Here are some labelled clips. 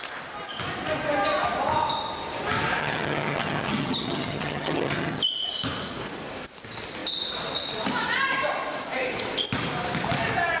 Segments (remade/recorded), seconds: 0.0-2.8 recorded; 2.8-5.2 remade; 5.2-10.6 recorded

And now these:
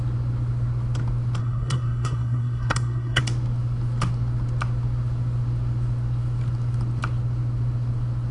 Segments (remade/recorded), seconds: 0.0-1.4 recorded; 1.4-3.2 remade; 3.2-8.3 recorded